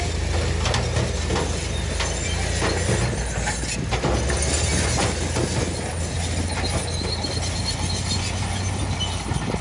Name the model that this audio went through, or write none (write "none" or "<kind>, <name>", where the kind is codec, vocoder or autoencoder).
none